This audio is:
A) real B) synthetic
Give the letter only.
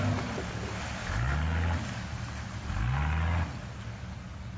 A